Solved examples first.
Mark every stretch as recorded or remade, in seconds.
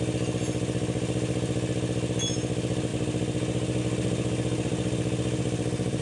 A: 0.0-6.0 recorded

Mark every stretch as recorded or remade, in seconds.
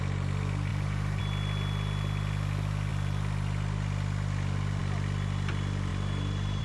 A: 0.0-0.7 recorded; 0.7-1.2 remade; 1.2-5.9 recorded; 5.9-6.6 remade